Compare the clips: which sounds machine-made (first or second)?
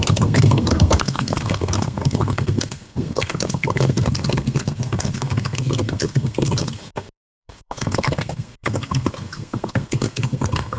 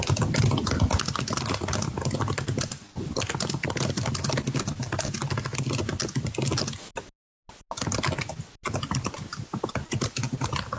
first